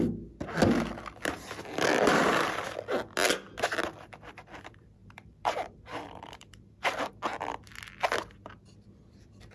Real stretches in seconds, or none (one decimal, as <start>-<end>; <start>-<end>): 0.0-5.0; 7.1-9.5

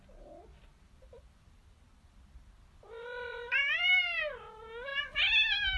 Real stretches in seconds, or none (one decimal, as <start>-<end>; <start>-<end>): 0.0-0.5; 4.0-5.8

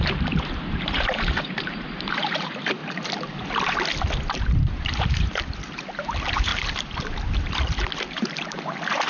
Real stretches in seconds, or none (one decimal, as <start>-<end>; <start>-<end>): 2.8-4.3; 6.5-8.1

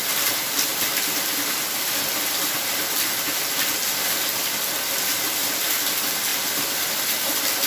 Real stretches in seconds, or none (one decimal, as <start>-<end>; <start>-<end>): 0.0-6.3; 7.2-7.7